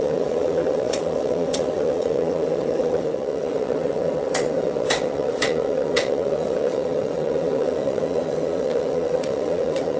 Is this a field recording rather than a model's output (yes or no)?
no